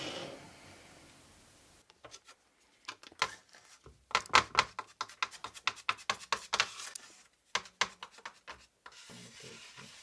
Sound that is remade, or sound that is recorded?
recorded